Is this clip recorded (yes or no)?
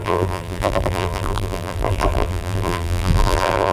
no